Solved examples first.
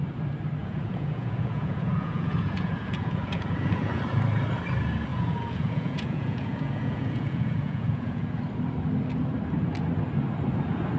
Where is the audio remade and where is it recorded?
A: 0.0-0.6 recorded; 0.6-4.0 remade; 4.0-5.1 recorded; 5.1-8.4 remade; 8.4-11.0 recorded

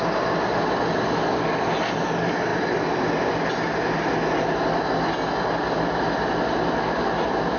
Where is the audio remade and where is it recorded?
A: 0.0-7.6 recorded

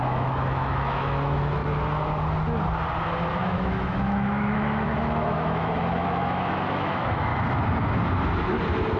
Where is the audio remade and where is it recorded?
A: 0.0-1.6 remade; 1.6-3.3 recorded; 3.3-7.3 remade; 7.3-9.0 recorded

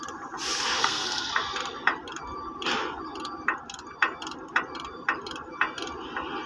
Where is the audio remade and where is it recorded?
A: 0.0-0.8 recorded; 0.8-1.3 remade; 1.3-6.5 recorded

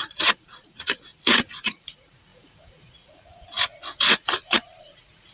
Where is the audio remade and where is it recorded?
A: 0.0-5.3 remade

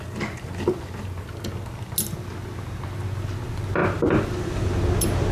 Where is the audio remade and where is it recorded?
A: 0.0-5.3 recorded

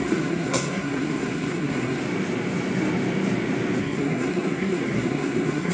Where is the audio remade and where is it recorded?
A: 0.0-2.0 remade; 2.0-3.8 recorded; 3.8-5.7 remade

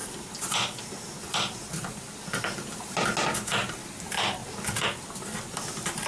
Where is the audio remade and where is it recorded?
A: 0.0-6.1 recorded